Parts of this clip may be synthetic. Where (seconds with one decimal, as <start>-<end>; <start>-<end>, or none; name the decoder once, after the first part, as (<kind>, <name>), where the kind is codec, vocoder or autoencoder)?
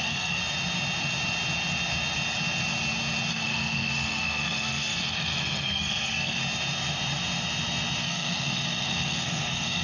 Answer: 0.0-0.4 (codec, SNAC); 3.3-6.4; 8.0-9.8